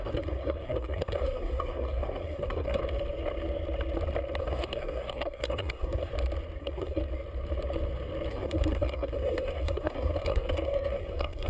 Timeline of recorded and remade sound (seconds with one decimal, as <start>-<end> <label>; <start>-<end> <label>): 0.0-2.8 remade; 2.8-4.4 recorded; 4.4-6.1 remade; 6.1-6.6 recorded; 6.6-7.0 remade; 7.0-8.3 recorded; 8.3-11.5 remade